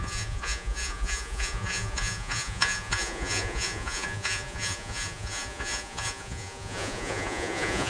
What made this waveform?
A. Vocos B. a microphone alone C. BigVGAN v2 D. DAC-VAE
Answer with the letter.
A